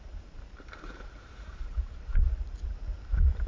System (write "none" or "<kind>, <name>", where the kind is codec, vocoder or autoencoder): vocoder, BigVGAN v2